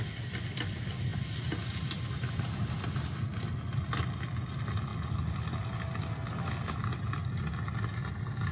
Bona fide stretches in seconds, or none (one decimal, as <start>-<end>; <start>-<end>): 0.0-8.5